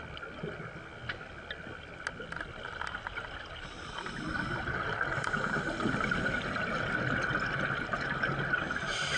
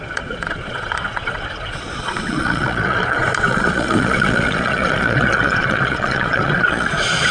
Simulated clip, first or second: second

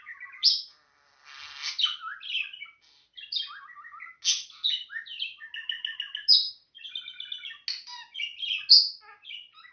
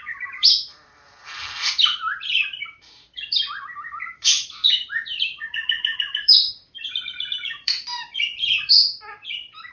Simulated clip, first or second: second